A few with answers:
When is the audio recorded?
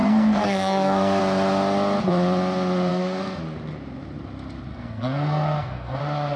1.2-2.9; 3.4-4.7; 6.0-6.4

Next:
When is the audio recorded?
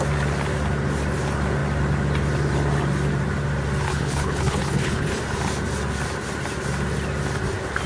0.0-3.9; 5.2-7.9